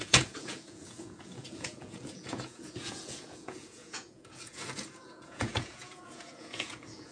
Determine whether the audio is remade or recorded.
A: remade